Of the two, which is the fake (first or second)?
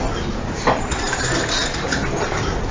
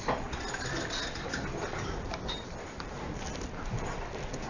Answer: second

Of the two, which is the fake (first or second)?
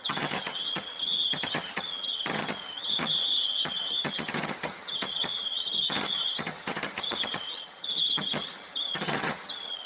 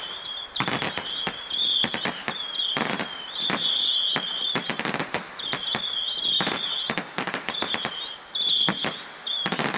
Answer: first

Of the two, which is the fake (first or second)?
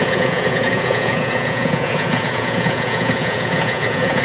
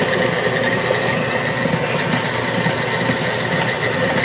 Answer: first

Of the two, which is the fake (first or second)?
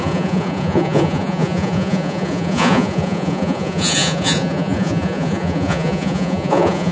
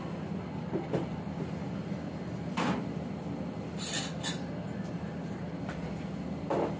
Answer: first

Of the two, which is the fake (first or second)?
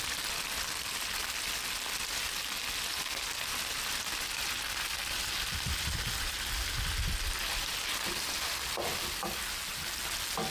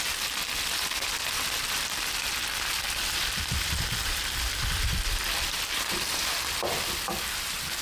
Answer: second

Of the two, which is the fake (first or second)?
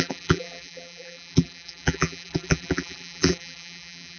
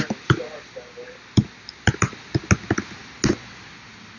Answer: first